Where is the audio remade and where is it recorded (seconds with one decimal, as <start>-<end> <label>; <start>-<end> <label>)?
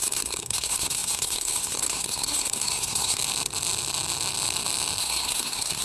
0.0-3.2 remade; 3.2-5.0 recorded; 5.0-5.8 remade